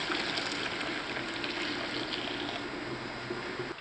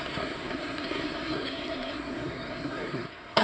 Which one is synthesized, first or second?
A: second